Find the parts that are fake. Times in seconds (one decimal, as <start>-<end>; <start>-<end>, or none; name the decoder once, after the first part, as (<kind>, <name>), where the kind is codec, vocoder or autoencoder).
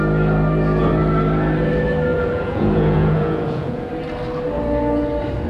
2.1-3.9 (vocoder, Vocos)